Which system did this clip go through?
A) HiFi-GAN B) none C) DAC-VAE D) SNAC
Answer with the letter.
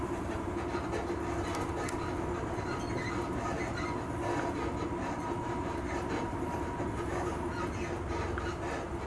B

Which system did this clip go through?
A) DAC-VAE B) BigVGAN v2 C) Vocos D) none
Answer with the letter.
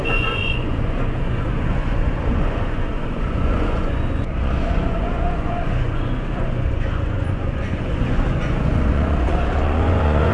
C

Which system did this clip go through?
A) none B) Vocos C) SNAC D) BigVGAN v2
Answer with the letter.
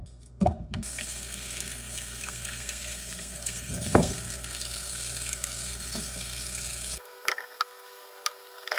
C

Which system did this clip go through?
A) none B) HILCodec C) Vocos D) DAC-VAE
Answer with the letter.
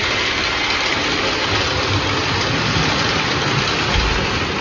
A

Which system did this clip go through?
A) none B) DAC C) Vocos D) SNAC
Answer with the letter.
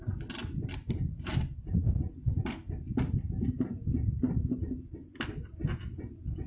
A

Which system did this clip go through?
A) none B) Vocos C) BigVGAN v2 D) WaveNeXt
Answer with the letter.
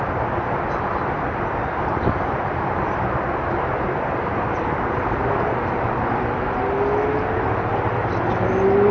A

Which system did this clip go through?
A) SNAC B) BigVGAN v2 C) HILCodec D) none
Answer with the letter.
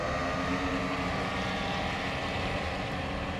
B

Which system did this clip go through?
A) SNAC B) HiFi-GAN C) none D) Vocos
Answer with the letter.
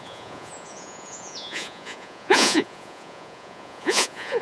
D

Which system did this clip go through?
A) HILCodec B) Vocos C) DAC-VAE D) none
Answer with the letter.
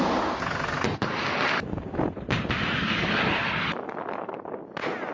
D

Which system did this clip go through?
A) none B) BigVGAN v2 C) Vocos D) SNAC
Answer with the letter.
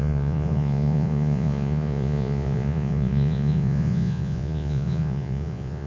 C